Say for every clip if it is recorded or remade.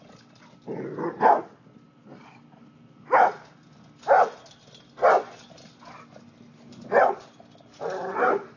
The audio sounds recorded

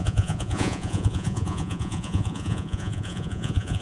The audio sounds remade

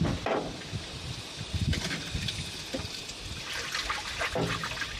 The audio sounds recorded